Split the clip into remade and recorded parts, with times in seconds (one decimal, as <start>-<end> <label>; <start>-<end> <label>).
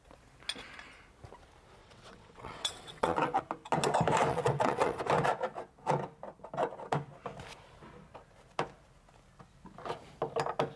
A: 0.0-1.8 recorded; 1.8-3.4 remade; 3.4-4.3 recorded; 4.3-5.0 remade; 5.0-10.8 recorded